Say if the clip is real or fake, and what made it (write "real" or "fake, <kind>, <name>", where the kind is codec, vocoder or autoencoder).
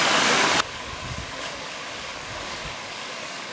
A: fake, codec, DAC